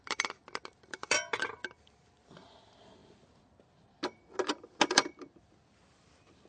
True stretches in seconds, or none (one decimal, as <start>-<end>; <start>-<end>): 3.0-5.2